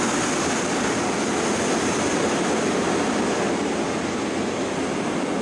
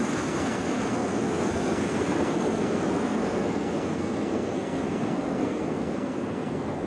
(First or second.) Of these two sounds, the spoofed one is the second